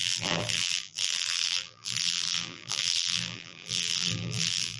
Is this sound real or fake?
fake